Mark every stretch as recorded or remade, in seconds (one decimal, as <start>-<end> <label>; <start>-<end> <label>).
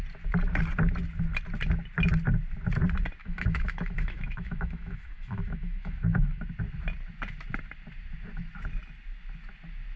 0.0-3.2 recorded; 3.2-6.4 remade; 6.4-10.0 recorded